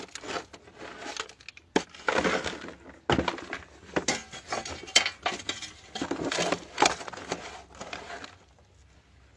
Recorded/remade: recorded